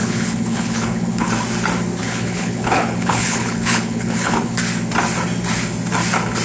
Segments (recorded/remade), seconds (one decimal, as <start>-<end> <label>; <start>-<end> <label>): 0.0-1.3 remade; 1.3-2.0 recorded; 2.0-4.6 remade; 4.6-6.4 recorded